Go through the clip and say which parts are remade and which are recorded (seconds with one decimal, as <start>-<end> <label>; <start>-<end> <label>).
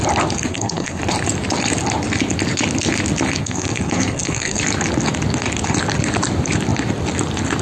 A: 0.0-0.5 recorded; 0.5-1.0 remade; 1.0-3.4 recorded; 3.4-4.6 remade; 4.6-7.6 recorded